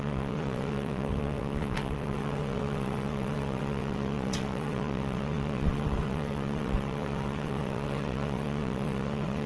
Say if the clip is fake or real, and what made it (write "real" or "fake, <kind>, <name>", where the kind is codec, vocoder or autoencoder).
fake, vocoder, WaveNeXt